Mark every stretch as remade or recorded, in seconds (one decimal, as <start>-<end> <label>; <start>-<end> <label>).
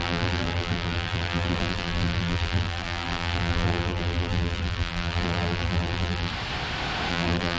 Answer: 0.0-6.3 remade; 6.3-7.1 recorded; 7.1-7.6 remade